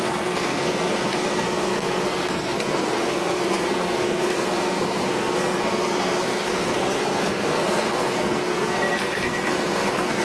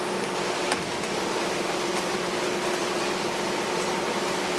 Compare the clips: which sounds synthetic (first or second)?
first